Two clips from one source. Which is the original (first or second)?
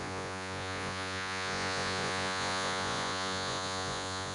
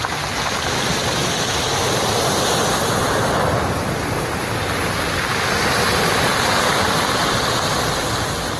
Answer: second